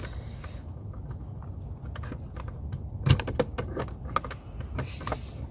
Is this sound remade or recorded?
recorded